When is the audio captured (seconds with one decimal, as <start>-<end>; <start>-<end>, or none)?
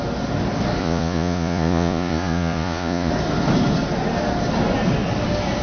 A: 0.0-0.8; 3.1-5.6